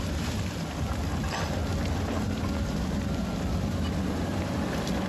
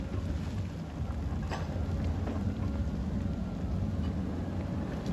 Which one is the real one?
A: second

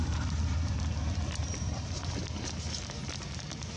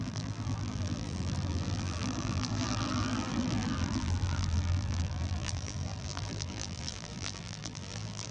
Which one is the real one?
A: first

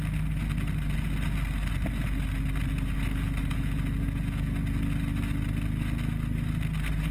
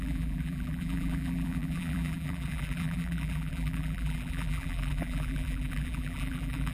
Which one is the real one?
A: first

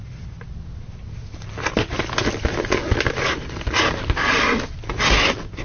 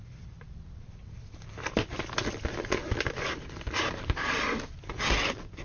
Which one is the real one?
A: first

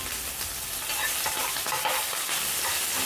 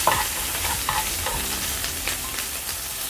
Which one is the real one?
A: first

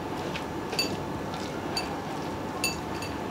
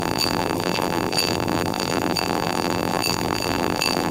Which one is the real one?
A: first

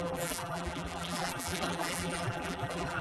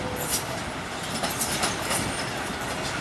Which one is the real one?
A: second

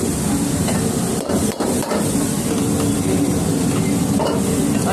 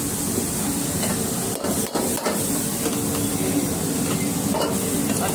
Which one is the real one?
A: second